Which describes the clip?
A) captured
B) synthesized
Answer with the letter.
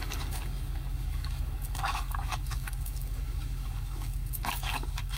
B